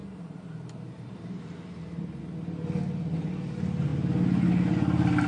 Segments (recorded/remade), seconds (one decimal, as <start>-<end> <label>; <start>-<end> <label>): 0.0-2.2 remade; 2.2-5.3 recorded